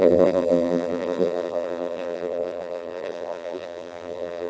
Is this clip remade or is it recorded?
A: remade